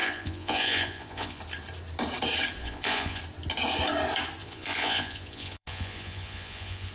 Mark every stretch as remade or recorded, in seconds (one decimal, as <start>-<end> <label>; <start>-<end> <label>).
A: 0.0-1.4 remade; 1.4-2.6 recorded; 2.6-3.2 remade; 3.2-4.4 recorded; 4.4-6.9 remade